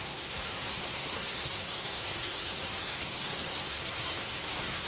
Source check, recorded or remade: remade